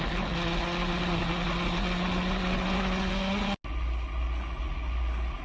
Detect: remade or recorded recorded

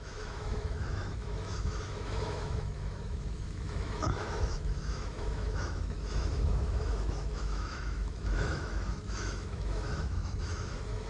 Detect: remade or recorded remade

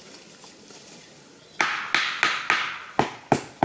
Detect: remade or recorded recorded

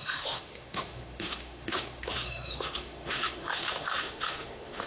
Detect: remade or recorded remade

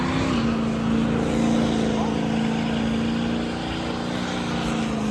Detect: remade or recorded recorded